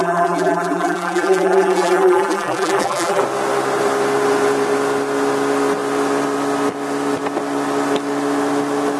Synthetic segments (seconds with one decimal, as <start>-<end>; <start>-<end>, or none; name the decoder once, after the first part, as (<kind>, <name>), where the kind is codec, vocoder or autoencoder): 0.0-3.2 (vocoder, BigVGAN v2)